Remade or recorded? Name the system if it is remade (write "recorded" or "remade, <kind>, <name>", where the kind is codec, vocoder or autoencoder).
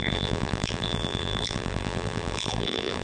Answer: remade, vocoder, BigVGAN v2